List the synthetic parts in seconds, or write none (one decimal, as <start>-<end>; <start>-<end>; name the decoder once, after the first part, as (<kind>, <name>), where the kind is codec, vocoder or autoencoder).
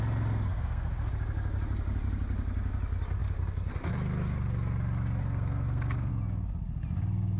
0.5-1.1 (codec, SNAC); 5.2-6.1